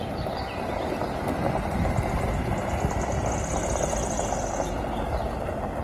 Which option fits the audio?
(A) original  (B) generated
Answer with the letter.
A